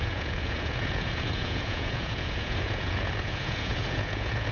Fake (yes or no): yes